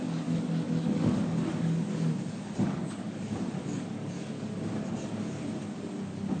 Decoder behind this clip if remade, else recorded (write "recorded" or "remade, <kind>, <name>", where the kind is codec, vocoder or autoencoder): remade, codec, DAC